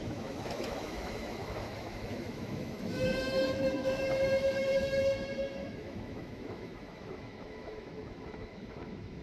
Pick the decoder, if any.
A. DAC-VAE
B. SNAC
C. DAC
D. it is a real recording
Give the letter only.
A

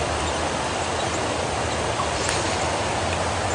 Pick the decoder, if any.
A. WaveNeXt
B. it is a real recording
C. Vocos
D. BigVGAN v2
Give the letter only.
B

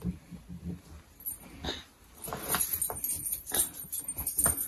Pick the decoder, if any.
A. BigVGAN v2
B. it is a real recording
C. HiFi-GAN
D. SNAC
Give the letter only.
B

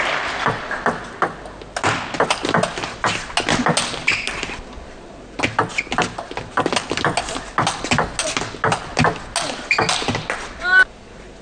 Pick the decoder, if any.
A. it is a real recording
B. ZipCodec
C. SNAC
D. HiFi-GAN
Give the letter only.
A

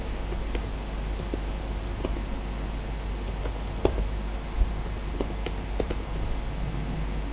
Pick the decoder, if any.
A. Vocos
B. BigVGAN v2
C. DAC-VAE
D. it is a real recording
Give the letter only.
D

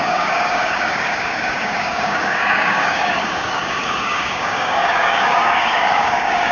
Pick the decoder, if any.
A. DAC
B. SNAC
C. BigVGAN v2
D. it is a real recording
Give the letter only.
A